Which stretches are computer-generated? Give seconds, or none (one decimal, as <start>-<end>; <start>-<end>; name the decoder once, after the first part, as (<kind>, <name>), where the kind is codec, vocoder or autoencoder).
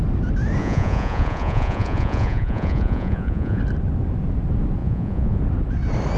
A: 0.6-3.6 (vocoder, Vocos); 4.8-5.4